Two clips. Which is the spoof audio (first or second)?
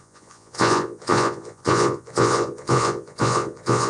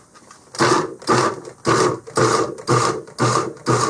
first